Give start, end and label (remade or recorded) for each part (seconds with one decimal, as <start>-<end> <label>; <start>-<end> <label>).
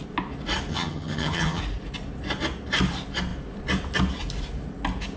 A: 0.0-0.7 recorded; 0.7-1.6 remade; 1.6-5.2 recorded